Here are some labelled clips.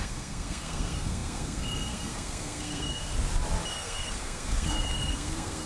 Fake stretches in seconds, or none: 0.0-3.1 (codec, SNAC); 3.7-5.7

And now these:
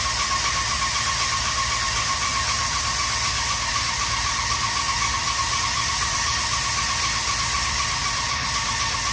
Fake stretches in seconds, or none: none